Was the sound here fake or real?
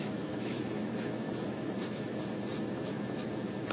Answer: fake